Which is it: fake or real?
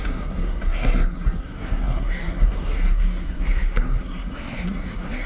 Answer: fake